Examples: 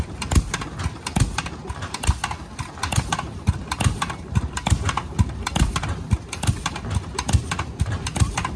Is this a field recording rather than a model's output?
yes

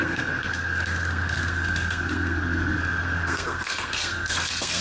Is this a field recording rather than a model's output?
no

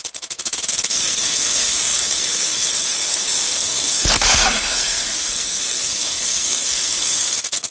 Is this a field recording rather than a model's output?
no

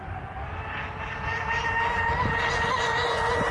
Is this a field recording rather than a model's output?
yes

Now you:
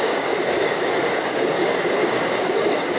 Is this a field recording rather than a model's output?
no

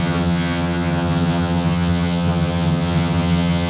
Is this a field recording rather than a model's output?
no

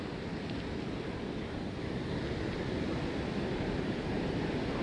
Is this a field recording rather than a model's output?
yes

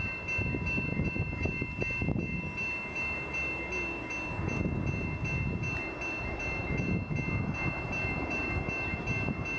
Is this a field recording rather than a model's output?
yes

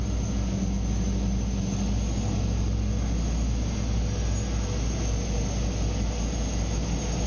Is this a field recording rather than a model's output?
yes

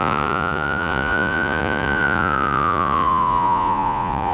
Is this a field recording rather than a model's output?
no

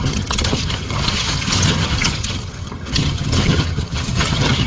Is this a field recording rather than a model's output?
no